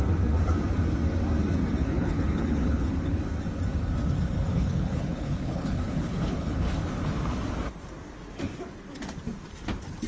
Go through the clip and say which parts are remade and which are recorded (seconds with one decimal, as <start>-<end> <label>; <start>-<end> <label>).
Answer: 0.0-1.8 recorded; 1.8-3.2 remade; 3.2-4.5 recorded; 4.5-6.7 remade; 6.7-10.1 recorded